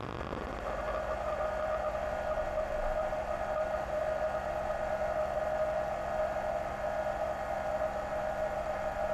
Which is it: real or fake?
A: real